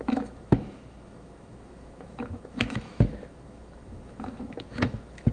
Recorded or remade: remade